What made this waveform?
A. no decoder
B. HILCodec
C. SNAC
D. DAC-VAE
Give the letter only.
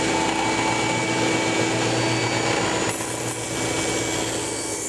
A